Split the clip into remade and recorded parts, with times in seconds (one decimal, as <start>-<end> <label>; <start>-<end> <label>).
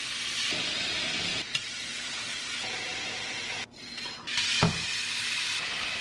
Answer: 0.0-1.3 recorded; 1.3-2.3 remade; 2.3-2.9 recorded; 2.9-3.7 remade; 3.7-6.0 recorded